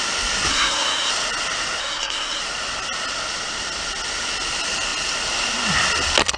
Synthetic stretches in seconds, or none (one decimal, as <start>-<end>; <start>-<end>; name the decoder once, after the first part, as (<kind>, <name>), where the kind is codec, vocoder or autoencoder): 0.5-1.1 (codec, SNAC); 1.8-2.4